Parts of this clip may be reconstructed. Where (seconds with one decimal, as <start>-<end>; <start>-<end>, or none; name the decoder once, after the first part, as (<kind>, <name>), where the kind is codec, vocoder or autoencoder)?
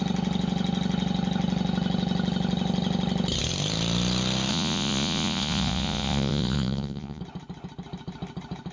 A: 4.5-7.2 (vocoder, Vocos)